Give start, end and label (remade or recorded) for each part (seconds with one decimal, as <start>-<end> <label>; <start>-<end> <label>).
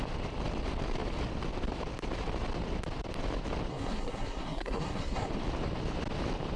0.0-3.7 recorded; 3.7-5.3 remade; 5.3-6.6 recorded